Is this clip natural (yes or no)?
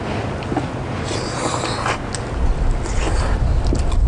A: yes